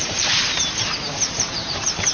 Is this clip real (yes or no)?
no